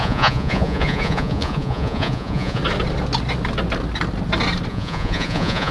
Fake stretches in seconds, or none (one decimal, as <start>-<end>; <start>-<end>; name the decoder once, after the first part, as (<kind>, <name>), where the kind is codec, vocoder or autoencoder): 0.0-2.6 (vocoder, Vocos); 4.7-5.7